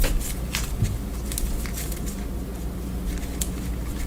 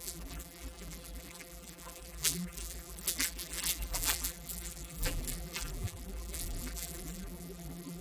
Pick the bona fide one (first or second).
first